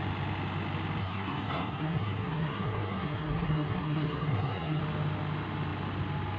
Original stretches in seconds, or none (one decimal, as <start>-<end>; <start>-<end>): 0.0-1.0; 4.8-6.4